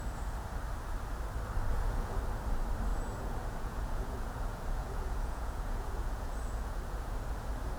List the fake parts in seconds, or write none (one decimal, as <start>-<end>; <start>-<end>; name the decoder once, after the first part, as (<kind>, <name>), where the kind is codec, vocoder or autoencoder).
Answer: 1.7-2.2 (vocoder, Vocos); 2.9-7.3